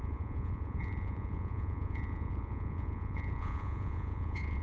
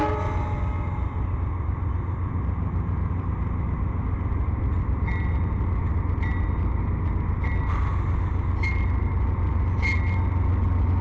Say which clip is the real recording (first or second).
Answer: second